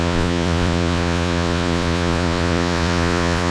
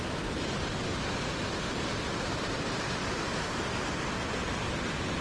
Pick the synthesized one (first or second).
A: first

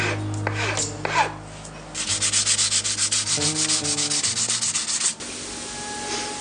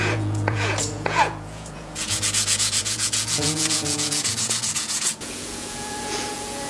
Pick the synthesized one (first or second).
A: second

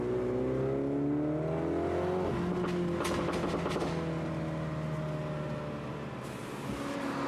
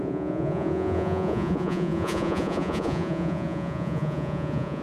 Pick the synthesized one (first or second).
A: second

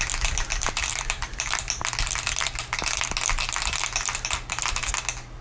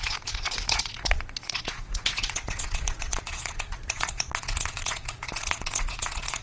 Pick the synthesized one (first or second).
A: second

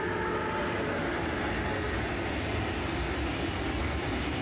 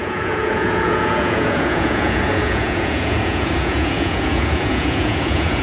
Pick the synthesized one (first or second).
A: second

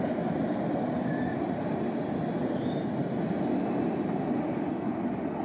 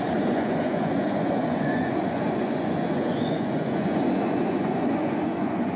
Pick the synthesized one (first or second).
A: second